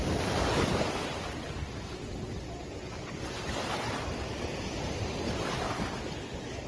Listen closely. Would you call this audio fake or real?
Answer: real